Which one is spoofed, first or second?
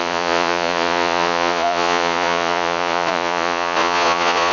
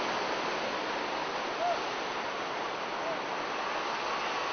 first